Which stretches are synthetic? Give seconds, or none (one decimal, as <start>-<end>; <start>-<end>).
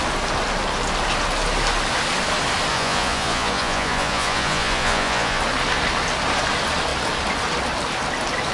2.7-5.4